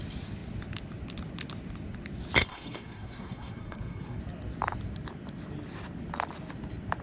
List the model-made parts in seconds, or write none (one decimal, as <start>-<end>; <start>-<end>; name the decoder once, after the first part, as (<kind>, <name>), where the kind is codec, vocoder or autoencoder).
2.5-4.2 (codec, SNAC)